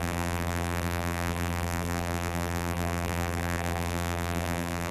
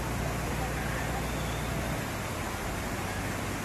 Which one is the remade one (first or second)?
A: first